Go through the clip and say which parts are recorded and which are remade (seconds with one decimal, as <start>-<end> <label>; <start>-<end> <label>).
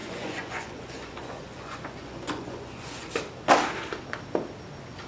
0.0-3.1 remade; 3.1-5.1 recorded